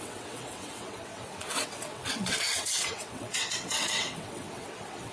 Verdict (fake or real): fake